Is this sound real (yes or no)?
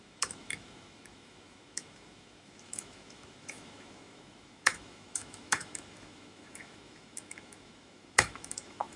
no